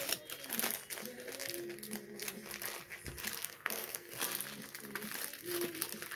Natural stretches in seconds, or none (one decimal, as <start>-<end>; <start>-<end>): 0.0-3.4; 4.1-6.2